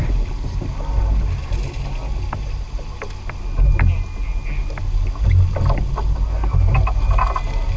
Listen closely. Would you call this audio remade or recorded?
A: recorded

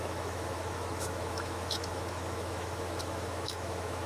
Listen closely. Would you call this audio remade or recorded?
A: remade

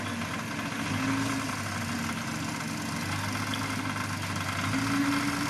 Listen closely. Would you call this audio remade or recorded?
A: recorded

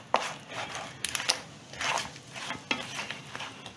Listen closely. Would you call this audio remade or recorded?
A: recorded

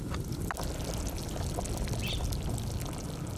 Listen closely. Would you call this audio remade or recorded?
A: recorded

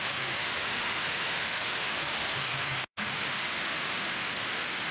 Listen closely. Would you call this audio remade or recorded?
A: remade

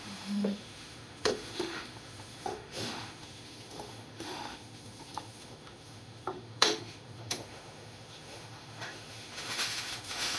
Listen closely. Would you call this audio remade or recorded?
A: remade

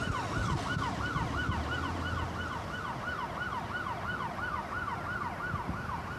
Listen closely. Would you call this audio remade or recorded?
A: recorded